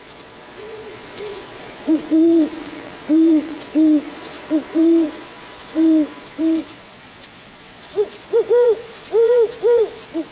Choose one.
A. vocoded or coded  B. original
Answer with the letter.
A